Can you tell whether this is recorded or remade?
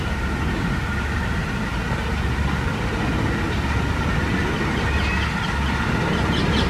recorded